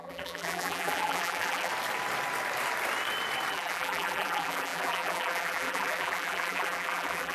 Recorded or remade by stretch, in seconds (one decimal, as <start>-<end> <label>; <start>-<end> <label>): 0.0-1.7 remade; 1.7-3.5 recorded; 3.5-7.3 remade

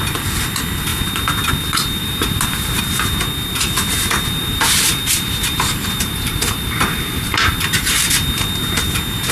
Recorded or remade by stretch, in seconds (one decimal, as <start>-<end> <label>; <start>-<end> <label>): 0.0-2.0 recorded; 2.0-2.8 remade; 2.8-4.4 recorded; 4.4-7.9 remade; 7.9-9.3 recorded

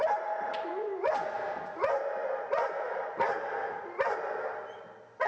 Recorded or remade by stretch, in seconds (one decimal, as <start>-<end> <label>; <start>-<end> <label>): 0.0-5.3 remade

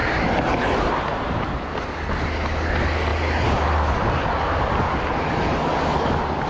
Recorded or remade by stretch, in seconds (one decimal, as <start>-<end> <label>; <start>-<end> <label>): 0.0-6.5 recorded

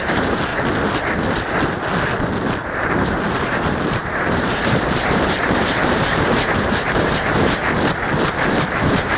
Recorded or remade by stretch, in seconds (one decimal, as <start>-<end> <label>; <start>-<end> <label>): 0.0-0.5 remade; 0.5-2.8 recorded; 2.8-7.6 remade; 7.6-8.7 recorded; 8.7-9.2 remade

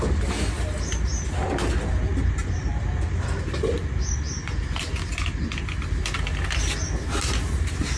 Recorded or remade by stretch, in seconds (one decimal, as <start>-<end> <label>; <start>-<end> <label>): 0.0-8.0 recorded

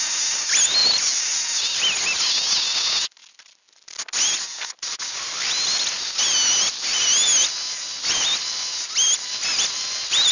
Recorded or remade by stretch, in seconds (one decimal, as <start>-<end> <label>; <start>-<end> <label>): 0.0-0.8 recorded; 0.8-1.4 remade; 1.4-10.3 recorded